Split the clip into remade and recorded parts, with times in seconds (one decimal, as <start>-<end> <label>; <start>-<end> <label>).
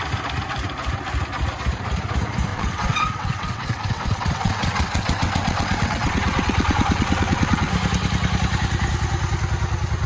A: 0.0-2.5 recorded; 2.5-7.7 remade; 7.7-10.1 recorded